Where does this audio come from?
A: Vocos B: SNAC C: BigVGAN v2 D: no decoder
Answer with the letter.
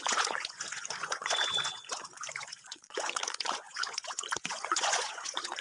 A